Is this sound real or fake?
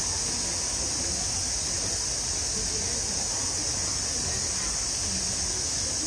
real